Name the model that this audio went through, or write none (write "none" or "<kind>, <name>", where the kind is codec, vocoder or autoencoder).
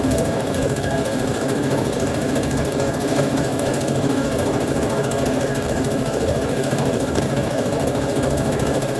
codec, DAC